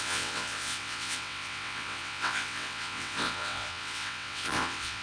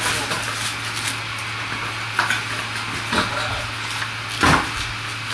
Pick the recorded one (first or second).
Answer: second